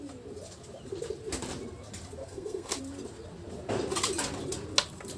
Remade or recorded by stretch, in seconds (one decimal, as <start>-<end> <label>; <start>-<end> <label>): 0.0-2.2 recorded; 2.2-2.8 remade; 2.8-5.2 recorded

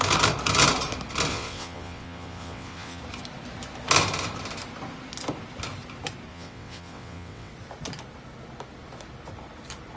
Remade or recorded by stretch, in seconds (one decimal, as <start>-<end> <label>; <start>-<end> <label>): 0.0-1.3 recorded; 1.3-3.0 remade; 3.0-6.3 recorded; 6.3-7.5 remade; 7.5-10.0 recorded